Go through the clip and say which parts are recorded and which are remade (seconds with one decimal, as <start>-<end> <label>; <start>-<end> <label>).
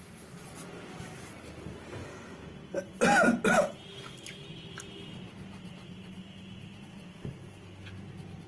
0.0-8.5 recorded